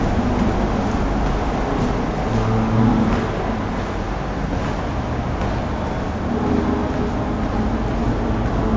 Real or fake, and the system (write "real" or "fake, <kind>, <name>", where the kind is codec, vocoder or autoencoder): real